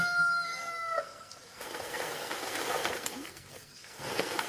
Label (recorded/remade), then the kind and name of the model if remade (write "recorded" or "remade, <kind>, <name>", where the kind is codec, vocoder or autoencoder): remade, codec, SNAC